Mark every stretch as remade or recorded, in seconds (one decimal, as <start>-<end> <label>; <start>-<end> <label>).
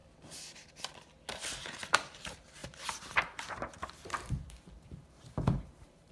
0.0-1.9 recorded; 1.9-6.1 remade